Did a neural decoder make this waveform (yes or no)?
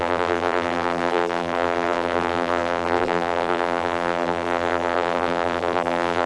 yes